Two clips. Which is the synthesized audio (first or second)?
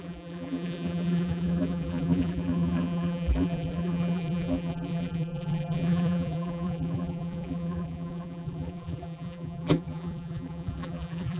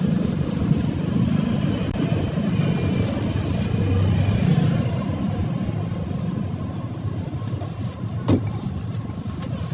first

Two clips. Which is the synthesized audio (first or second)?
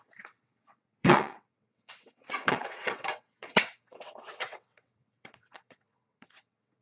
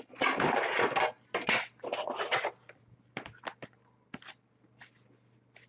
first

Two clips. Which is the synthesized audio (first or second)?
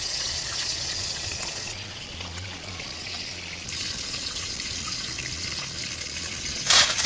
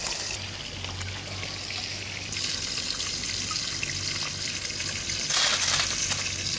first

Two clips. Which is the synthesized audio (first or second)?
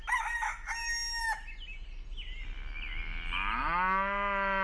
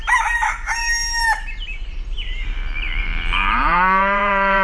second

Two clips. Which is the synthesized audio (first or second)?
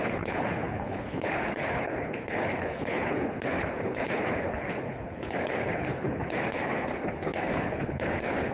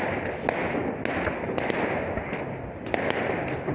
first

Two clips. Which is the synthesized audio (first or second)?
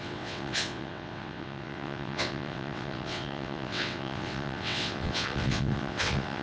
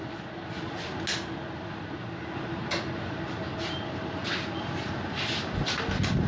first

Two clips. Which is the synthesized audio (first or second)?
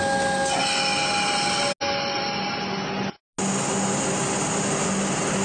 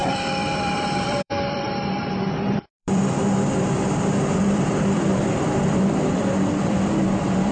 second